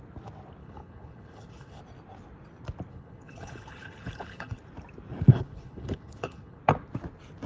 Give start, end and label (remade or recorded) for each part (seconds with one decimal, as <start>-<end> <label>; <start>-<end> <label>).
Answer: 0.0-0.6 recorded; 0.6-1.8 remade; 1.8-2.9 recorded; 2.9-4.6 remade; 4.6-5.3 recorded; 5.3-6.6 remade; 6.6-7.5 recorded